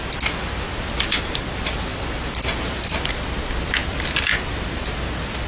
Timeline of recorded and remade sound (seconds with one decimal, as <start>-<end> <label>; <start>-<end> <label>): 0.0-1.9 recorded; 1.9-3.1 remade; 3.1-5.5 recorded